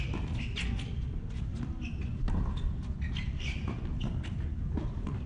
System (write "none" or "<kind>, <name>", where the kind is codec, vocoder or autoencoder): none